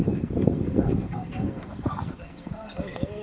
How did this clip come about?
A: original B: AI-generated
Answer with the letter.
B